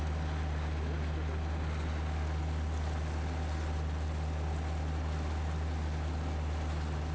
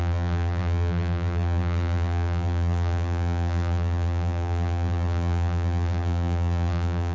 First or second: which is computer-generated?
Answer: second